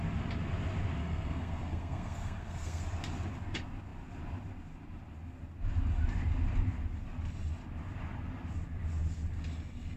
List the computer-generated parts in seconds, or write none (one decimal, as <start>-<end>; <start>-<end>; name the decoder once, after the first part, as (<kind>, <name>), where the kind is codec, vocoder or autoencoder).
1.0-2.8 (codec, SNAC)